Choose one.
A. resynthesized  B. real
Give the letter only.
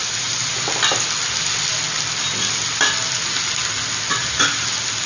B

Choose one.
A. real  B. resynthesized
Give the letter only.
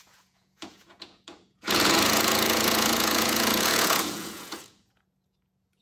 B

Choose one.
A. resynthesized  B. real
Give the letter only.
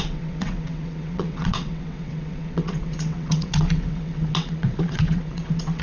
A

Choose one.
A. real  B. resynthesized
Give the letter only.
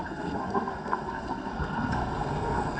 B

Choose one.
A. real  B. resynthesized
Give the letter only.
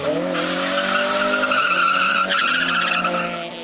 A